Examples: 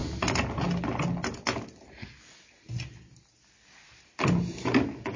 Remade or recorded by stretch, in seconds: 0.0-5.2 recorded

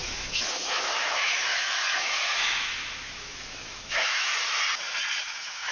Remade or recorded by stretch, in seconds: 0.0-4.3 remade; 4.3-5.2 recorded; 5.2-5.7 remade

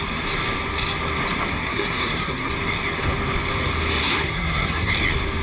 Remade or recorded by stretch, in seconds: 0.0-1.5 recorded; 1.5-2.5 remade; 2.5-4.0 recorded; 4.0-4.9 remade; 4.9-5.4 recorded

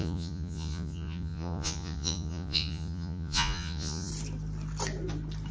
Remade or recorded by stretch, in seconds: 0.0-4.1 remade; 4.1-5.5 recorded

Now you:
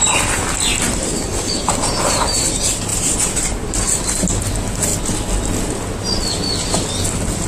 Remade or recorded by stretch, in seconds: 0.0-1.3 remade; 1.3-1.9 recorded; 1.9-4.9 remade; 4.9-6.2 recorded; 6.2-7.5 remade

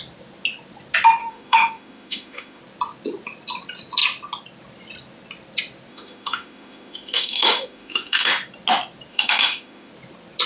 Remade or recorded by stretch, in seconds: 0.0-1.2 recorded; 1.2-2.6 remade; 2.6-5.9 recorded; 5.9-8.3 remade; 8.3-9.1 recorded; 9.1-9.9 remade; 9.9-10.5 recorded